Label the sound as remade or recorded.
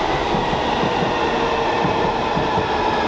recorded